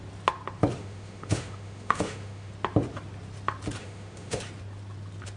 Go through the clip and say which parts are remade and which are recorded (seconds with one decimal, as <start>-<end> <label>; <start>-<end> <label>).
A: 0.0-0.8 recorded; 0.8-2.5 remade; 2.5-3.8 recorded; 3.8-4.4 remade; 4.4-5.4 recorded